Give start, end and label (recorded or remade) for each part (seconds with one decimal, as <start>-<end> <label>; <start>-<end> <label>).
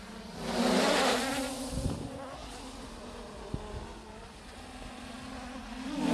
0.0-6.1 recorded